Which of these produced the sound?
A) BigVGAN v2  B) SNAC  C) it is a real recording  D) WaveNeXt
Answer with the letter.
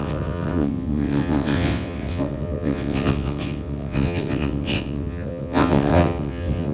D